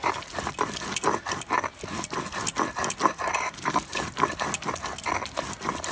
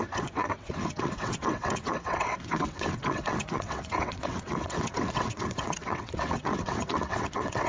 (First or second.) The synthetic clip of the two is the second